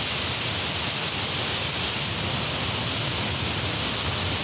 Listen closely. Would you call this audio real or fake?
real